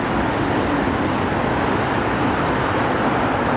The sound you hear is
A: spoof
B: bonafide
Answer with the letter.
B